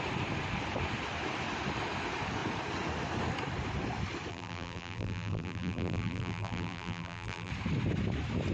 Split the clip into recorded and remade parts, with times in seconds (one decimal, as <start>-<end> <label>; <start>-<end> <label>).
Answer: 0.0-4.3 recorded; 4.3-7.5 remade; 7.5-8.5 recorded